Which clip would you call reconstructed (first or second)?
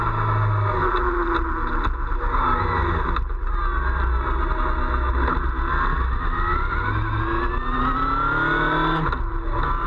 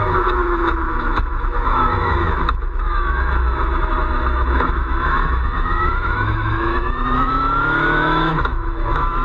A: second